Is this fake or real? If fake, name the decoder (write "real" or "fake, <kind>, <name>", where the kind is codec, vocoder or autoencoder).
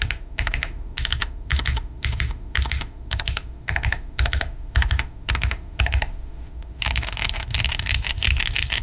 fake, autoencoder, DAC-VAE